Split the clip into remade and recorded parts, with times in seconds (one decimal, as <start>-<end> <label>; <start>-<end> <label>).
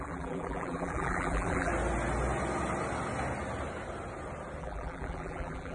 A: 0.0-1.7 remade; 1.7-4.6 recorded; 4.6-5.7 remade